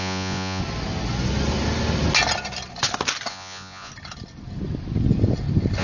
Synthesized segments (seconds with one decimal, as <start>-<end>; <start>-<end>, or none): 0.0-0.6; 3.3-3.9